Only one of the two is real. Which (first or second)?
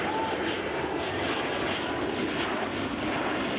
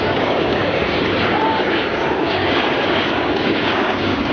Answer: first